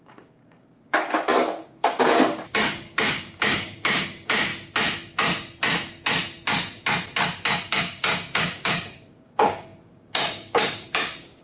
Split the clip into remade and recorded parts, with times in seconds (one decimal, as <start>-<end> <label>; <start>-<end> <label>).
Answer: 0.0-4.5 remade; 4.5-7.7 recorded; 7.7-11.4 remade